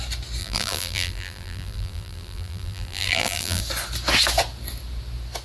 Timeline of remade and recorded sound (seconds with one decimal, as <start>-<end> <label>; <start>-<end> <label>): 0.0-0.4 recorded; 0.4-3.6 remade; 3.6-5.4 recorded